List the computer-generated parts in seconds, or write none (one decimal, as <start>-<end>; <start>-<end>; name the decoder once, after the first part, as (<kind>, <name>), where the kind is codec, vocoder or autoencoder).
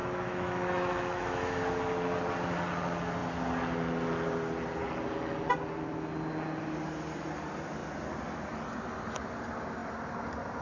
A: 0.0-1.6 (autoencoder, DAC-VAE)